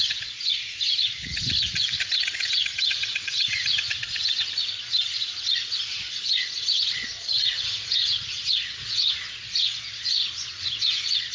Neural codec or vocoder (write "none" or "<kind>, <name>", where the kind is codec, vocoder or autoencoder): vocoder, Vocos